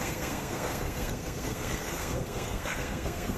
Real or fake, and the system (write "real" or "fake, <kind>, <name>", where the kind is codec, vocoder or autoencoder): fake, codec, SNAC